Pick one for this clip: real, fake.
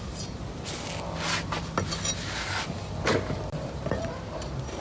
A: real